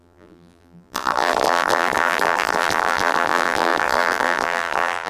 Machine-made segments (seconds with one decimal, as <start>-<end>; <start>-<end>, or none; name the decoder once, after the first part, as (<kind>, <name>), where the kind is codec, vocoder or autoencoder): 0.0-5.1 (vocoder, BigVGAN v2)